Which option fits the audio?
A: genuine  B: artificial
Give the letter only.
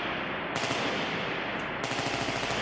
A